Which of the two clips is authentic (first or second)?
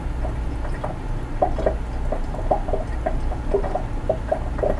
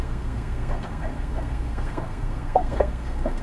first